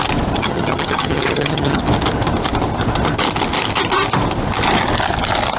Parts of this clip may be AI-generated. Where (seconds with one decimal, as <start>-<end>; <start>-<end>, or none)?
0.4-1.8